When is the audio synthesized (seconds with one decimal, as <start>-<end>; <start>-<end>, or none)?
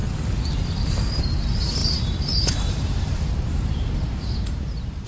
1.8-5.1